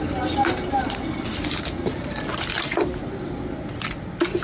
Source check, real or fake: real